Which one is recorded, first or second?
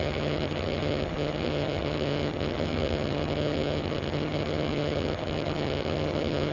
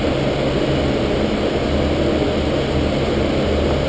second